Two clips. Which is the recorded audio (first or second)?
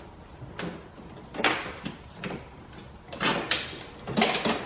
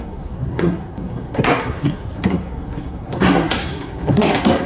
first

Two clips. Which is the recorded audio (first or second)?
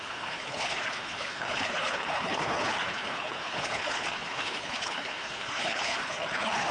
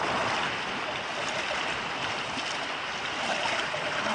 second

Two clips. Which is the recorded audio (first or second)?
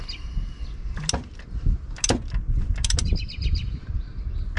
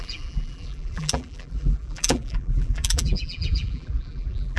first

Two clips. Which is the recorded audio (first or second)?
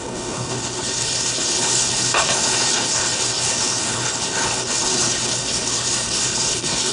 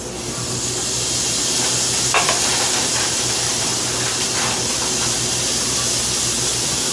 second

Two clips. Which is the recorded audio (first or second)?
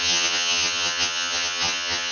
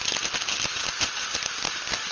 second